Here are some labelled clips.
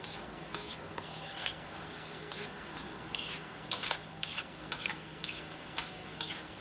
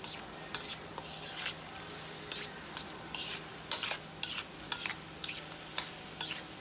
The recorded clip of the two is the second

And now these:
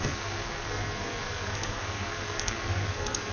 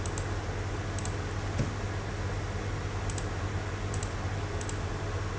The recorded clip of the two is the second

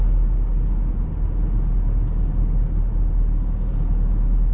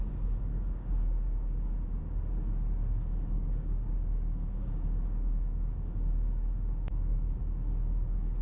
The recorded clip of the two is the first